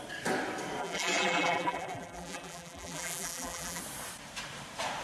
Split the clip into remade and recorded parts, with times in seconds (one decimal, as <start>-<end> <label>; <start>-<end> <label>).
0.0-0.8 recorded; 0.8-3.8 remade; 3.8-5.0 recorded